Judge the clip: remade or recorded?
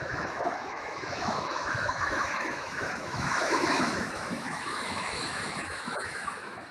remade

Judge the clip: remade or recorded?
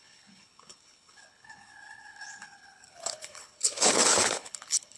remade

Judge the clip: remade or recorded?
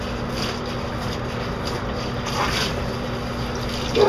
recorded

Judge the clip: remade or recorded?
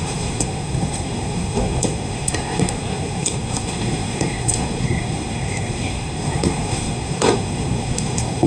remade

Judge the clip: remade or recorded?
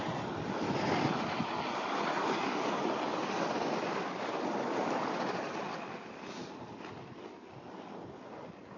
recorded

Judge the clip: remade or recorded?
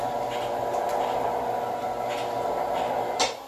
recorded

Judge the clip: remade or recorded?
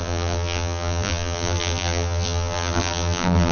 remade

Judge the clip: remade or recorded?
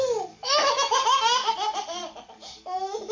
remade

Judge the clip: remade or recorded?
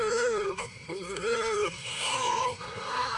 remade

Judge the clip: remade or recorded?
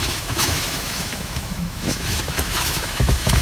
remade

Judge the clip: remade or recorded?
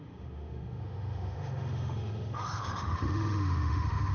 remade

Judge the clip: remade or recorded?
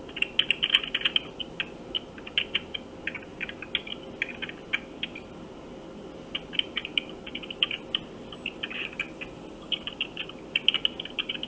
recorded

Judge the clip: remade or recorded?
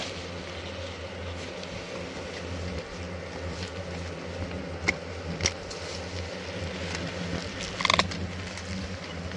recorded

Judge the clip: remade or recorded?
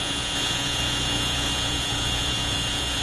remade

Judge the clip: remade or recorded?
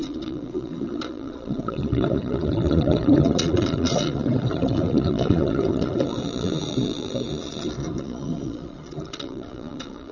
remade